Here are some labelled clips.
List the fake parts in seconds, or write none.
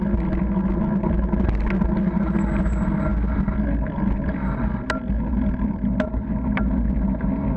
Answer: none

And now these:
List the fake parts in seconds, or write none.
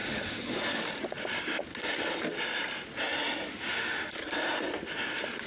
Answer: 0.0-0.8 (autoencoder, DAC-VAE); 3.5-4.2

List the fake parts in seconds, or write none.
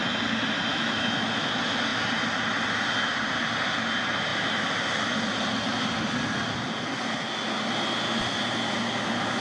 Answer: 0.7-1.5 (autoencoder, DAC-VAE)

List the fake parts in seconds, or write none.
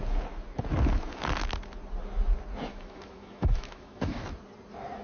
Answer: 2.7-4.2 (autoencoder, DAC-VAE)